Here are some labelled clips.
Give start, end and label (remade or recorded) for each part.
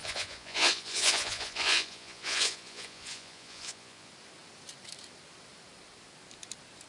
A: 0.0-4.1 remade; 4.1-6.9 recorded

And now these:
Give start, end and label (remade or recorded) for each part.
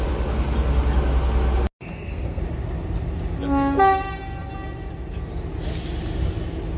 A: 0.0-1.9 recorded; 1.9-2.4 remade; 2.4-6.8 recorded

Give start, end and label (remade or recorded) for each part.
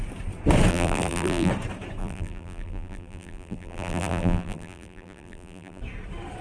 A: 0.0-0.7 recorded; 0.7-1.5 remade; 1.5-2.0 recorded; 2.0-5.8 remade; 5.8-6.4 recorded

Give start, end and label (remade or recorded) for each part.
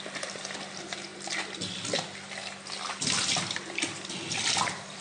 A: 0.0-5.0 recorded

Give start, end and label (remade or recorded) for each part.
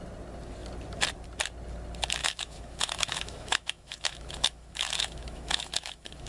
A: 0.0-2.2 recorded; 2.2-6.3 remade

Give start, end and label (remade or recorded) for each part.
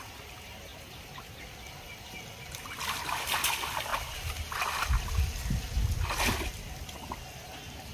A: 0.0-7.9 recorded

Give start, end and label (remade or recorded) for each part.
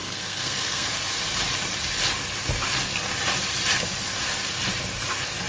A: 0.0-0.9 remade; 0.9-5.5 recorded